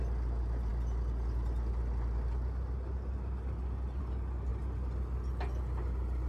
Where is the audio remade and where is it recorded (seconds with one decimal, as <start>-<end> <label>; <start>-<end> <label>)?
0.0-6.3 recorded